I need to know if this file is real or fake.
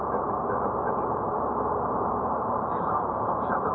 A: fake